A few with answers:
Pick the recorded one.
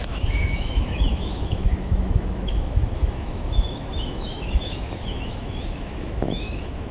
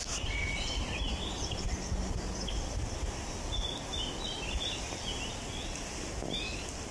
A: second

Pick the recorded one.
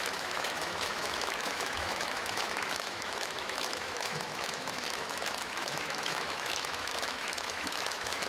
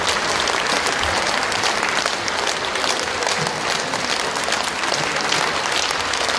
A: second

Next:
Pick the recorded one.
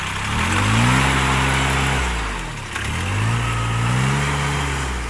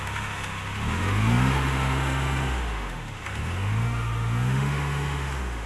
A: first